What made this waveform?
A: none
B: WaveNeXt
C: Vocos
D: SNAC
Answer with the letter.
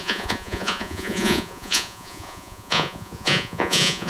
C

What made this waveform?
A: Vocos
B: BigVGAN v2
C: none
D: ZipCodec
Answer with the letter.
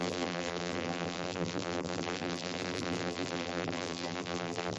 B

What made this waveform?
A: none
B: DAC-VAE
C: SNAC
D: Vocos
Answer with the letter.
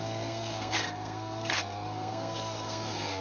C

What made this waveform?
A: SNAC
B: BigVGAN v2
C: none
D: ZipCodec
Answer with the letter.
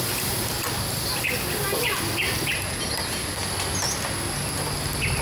C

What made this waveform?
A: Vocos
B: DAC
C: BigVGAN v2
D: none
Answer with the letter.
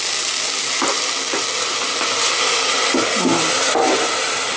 D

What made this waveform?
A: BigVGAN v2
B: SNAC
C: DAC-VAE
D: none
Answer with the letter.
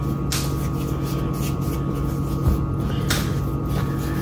D